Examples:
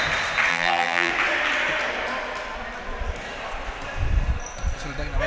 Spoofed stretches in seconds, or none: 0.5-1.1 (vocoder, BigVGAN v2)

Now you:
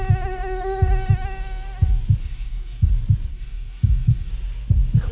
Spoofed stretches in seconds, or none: 2.2-2.9 (codec, DAC); 3.3-4.3

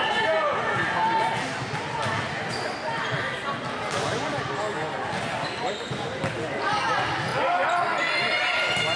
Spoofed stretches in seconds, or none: none

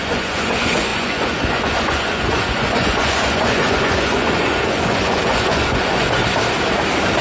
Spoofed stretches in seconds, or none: 0.0-6.2 (vocoder, Vocos)

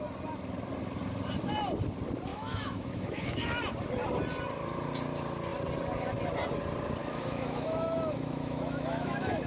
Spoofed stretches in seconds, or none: 2.3-3.6 (autoencoder, DAC-VAE); 7.0-9.5

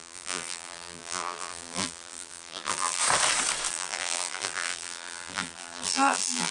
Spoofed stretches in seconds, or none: 0.0-3.0 (vocoder, BigVGAN v2); 3.7-6.5

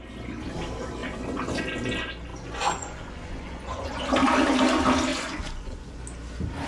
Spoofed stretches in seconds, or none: 1.0-1.6 (vocoder, Vocos); 2.3-4.0; 5.1-6.0